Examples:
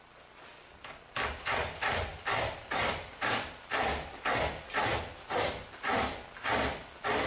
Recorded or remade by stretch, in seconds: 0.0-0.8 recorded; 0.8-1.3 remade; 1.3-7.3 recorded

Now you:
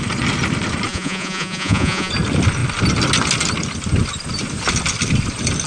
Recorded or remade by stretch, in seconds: 0.0-0.9 recorded; 0.9-2.1 remade; 2.1-5.7 recorded

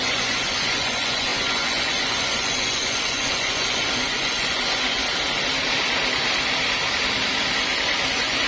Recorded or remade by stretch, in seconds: 0.0-5.0 remade; 5.0-8.1 recorded; 8.1-8.5 remade

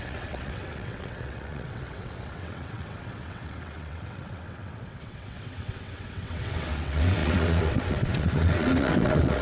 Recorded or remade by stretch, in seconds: 0.0-9.4 remade

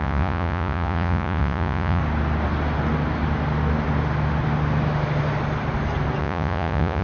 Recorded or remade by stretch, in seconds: 0.0-2.0 remade; 2.0-6.2 recorded; 6.2-7.0 remade

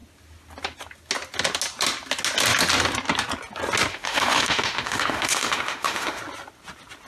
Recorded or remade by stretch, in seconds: 0.0-3.9 recorded; 3.9-6.2 remade; 6.2-7.1 recorded